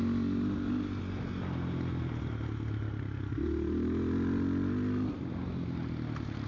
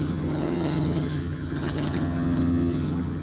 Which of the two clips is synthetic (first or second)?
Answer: second